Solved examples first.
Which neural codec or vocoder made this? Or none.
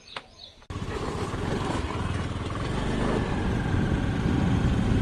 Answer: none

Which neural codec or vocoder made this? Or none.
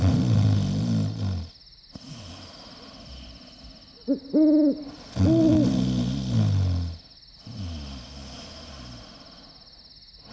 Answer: none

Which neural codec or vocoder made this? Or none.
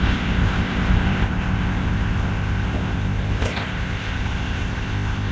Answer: codec, ZipCodec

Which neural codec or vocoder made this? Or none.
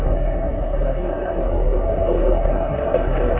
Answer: codec, SNAC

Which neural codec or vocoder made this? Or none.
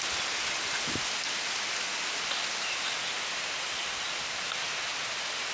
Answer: none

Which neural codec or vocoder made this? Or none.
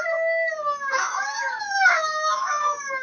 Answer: autoencoder, DAC-VAE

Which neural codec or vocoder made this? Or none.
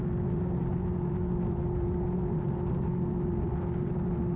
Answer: none